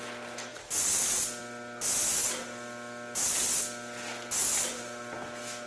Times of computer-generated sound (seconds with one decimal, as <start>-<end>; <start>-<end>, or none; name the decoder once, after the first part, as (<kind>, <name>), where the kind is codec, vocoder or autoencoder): none